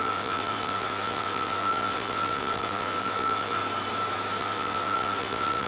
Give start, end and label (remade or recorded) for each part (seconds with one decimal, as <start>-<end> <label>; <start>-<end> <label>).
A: 0.0-3.6 remade; 3.6-4.4 recorded; 4.4-5.7 remade